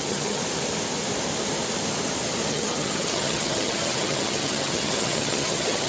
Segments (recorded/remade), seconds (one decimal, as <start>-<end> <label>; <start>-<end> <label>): 0.0-0.4 remade; 0.4-2.5 recorded; 2.5-5.9 remade